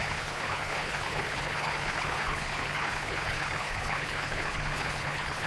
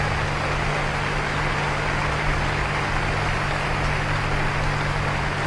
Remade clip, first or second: first